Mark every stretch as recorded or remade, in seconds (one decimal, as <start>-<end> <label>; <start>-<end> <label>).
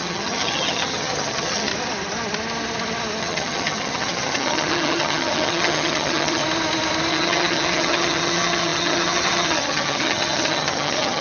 0.0-1.7 remade; 1.7-3.2 recorded; 3.2-6.4 remade; 6.4-7.1 recorded; 7.1-11.2 remade